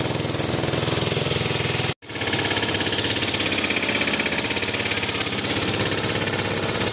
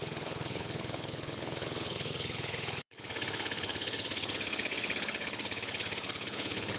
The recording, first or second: first